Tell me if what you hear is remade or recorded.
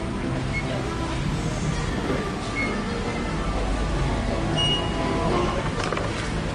recorded